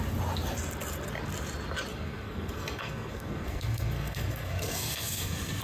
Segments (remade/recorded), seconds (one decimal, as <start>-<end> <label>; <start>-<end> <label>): 0.0-1.9 recorded; 1.9-5.6 remade